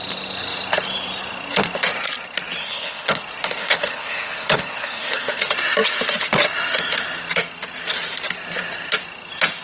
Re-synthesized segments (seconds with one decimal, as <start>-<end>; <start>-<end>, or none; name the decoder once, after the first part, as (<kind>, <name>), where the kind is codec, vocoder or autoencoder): 2.6-3.2 (codec, HILCodec); 3.6-5.4